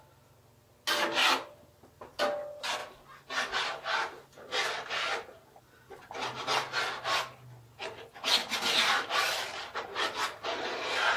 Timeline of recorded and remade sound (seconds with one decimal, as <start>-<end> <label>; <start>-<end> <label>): 0.0-8.4 recorded; 8.4-9.9 remade; 9.9-11.2 recorded